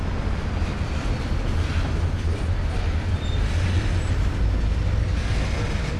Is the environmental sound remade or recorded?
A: recorded